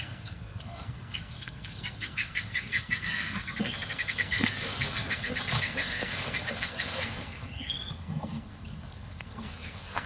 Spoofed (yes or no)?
yes